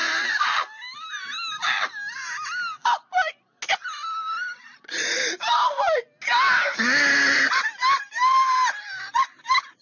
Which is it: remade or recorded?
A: recorded